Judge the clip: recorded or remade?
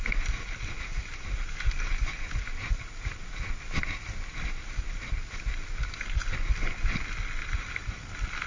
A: recorded